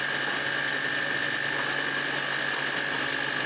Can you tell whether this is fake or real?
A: real